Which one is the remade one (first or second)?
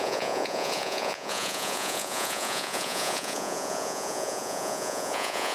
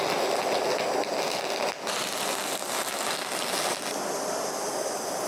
first